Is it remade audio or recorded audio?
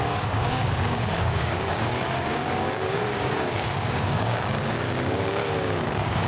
remade